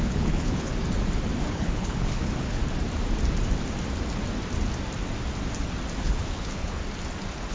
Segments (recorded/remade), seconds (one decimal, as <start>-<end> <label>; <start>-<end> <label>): 0.0-0.7 remade; 0.7-1.4 recorded; 1.4-2.6 remade; 2.6-6.0 recorded; 6.0-6.8 remade; 6.8-7.5 recorded